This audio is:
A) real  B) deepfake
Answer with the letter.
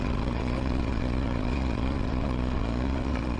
B